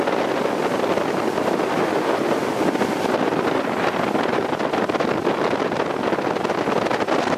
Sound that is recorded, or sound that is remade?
recorded